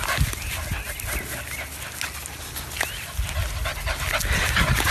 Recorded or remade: recorded